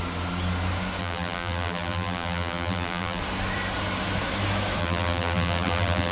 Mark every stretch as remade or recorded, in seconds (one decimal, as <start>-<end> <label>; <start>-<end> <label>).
0.0-1.0 recorded; 1.0-3.2 remade; 3.2-4.8 recorded; 4.8-6.1 remade